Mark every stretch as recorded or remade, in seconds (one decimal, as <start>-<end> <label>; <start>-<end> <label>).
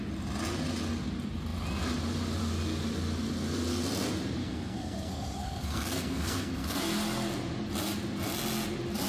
0.0-4.4 recorded; 4.4-6.8 remade; 6.8-9.1 recorded